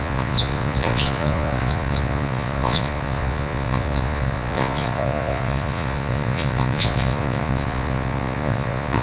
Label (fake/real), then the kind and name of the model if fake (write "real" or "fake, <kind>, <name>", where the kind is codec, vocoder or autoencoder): fake, vocoder, Vocos